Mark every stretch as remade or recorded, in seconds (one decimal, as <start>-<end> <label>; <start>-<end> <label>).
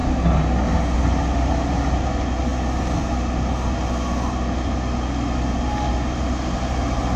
0.0-7.2 recorded